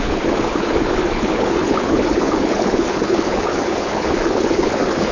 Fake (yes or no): yes